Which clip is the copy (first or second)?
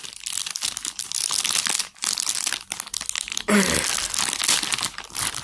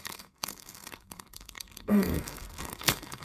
second